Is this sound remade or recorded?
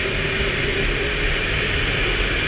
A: recorded